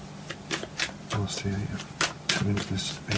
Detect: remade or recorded recorded